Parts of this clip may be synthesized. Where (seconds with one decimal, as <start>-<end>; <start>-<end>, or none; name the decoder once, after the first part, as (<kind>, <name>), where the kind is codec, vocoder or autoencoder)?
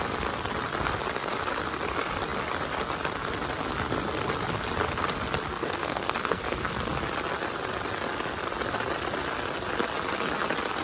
5.5-6.9 (codec, SNAC)